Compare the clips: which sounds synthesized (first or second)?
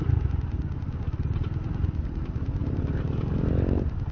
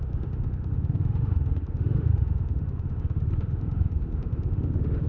second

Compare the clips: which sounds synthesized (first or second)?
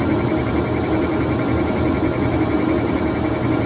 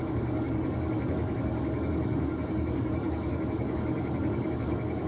second